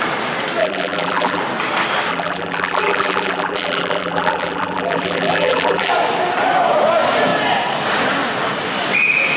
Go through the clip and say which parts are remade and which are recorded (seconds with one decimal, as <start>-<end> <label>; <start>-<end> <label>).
0.0-0.6 recorded; 0.6-1.4 remade; 1.4-2.1 recorded; 2.1-5.9 remade; 5.9-9.4 recorded